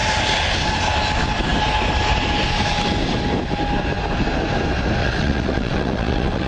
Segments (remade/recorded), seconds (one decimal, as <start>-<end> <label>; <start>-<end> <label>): 0.0-5.0 recorded; 5.0-6.5 remade